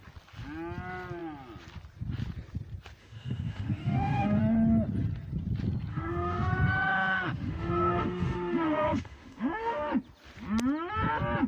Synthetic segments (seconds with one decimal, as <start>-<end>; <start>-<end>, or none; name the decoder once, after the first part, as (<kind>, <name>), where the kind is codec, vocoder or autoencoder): 3.0-4.4 (autoencoder, DAC-VAE); 5.9-9.9